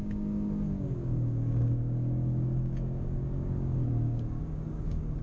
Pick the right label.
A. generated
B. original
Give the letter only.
A